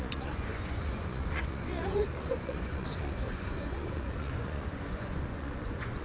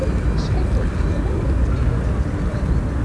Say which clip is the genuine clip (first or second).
second